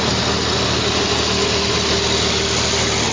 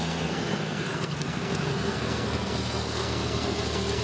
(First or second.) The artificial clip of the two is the second